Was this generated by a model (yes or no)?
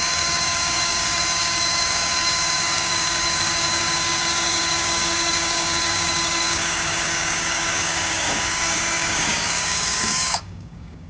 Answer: yes